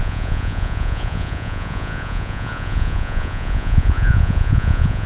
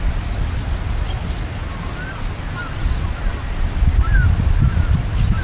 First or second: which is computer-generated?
first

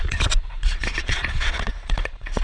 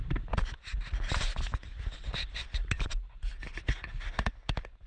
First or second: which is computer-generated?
first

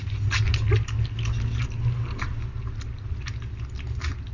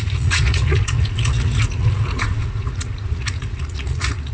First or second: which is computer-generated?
second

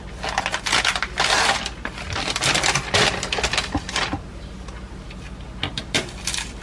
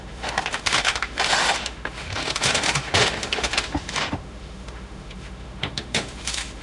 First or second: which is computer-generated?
second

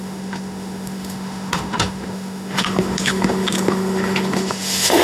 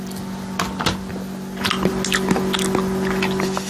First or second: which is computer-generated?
first